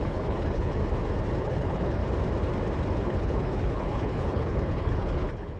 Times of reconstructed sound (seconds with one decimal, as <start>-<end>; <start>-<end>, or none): 0.0-0.8; 1.4-2.0; 3.0-5.6